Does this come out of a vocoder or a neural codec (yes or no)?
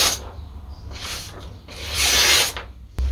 no